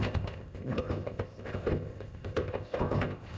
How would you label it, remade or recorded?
remade